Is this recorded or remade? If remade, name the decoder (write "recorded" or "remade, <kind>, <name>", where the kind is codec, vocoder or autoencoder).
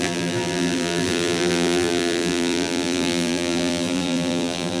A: remade, vocoder, BigVGAN v2